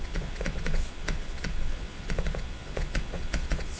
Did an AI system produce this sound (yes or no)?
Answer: yes